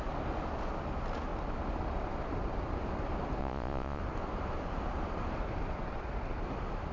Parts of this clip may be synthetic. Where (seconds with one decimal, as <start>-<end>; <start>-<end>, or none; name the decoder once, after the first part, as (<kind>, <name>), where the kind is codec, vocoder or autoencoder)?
3.4-4.0 (vocoder, Vocos)

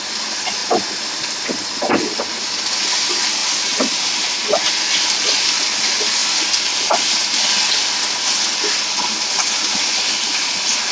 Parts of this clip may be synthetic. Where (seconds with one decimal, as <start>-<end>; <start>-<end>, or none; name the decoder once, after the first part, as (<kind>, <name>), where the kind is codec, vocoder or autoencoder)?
none

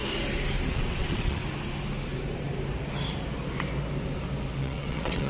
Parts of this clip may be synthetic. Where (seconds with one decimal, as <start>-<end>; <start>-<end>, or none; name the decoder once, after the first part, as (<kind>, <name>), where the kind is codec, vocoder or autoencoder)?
0.7-1.4 (vocoder, WaveNeXt); 4.6-5.3

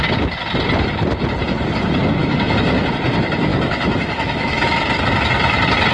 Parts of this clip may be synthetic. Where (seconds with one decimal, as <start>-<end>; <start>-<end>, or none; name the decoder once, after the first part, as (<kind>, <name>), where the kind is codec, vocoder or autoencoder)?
2.2-2.9 (autoencoder, DAC-VAE); 3.5-5.0

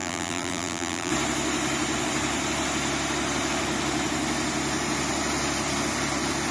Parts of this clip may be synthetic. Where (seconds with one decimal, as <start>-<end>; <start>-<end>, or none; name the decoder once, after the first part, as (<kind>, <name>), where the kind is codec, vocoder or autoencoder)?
0.0-1.1 (vocoder, BigVGAN v2)

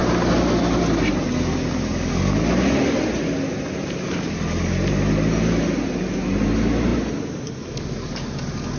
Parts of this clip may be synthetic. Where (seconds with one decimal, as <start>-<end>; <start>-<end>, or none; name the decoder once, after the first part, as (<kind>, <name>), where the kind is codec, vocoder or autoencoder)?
none